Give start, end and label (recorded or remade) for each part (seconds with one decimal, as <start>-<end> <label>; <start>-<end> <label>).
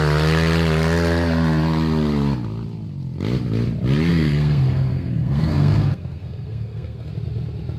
0.0-4.1 recorded; 4.1-7.1 remade; 7.1-7.8 recorded